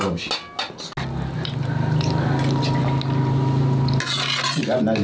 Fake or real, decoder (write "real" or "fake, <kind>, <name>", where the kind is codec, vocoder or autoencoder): real